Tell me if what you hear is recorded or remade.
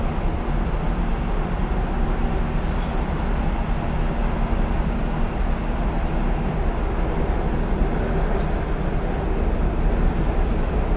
recorded